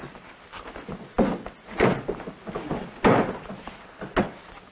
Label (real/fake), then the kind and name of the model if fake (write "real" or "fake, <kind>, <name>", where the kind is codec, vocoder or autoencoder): real